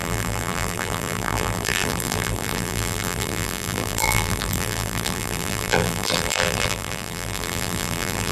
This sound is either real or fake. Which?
fake